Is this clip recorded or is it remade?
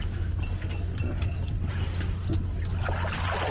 recorded